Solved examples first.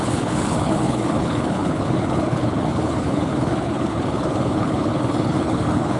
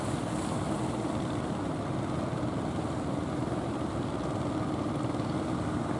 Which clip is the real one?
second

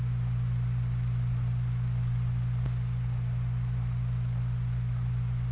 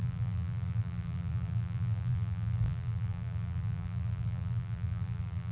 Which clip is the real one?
first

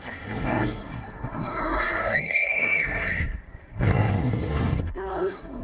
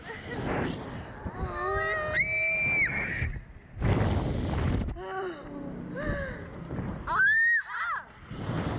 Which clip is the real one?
second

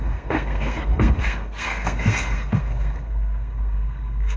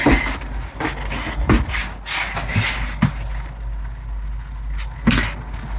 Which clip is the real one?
second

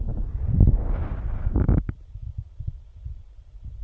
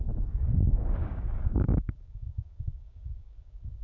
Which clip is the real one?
first